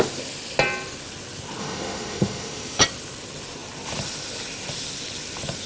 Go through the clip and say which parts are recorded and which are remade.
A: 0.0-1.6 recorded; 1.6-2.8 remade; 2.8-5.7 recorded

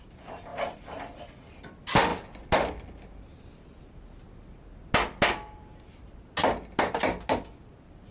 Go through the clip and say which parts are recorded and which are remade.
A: 0.0-8.1 recorded

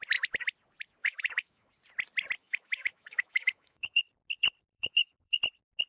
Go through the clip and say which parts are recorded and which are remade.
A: 0.0-1.0 recorded; 1.0-1.7 remade; 1.7-2.4 recorded; 2.4-4.0 remade; 4.0-4.7 recorded; 4.7-5.4 remade; 5.4-5.9 recorded

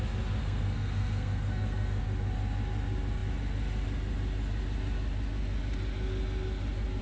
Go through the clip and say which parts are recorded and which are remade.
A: 0.0-0.4 recorded; 0.4-2.0 remade; 2.0-7.0 recorded

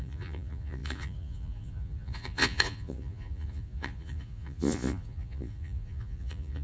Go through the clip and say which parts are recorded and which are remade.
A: 0.0-6.6 remade

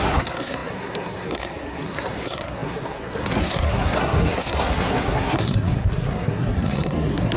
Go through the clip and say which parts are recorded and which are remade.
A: 0.0-7.4 remade

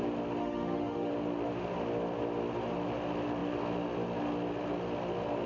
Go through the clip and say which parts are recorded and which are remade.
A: 0.0-0.4 recorded; 0.4-1.1 remade; 1.1-5.5 recorded